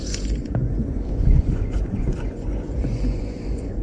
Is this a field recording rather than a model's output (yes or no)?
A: no